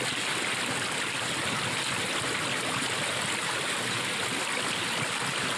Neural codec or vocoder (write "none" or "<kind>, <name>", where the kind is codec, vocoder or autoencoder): none